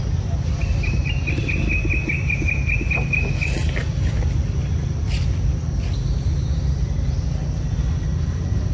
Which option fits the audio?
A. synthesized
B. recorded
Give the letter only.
B